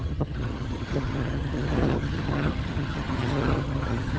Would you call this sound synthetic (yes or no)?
yes